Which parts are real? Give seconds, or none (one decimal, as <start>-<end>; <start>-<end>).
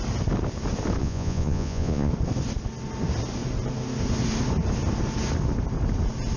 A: 0.0-1.0; 2.1-6.4